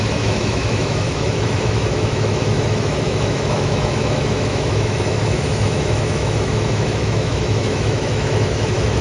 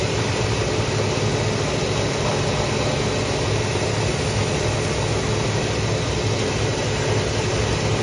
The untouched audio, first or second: second